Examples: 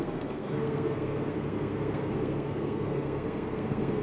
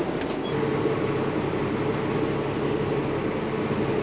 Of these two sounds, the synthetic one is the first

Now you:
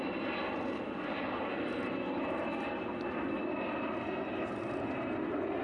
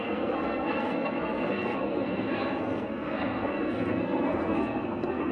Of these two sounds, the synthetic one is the second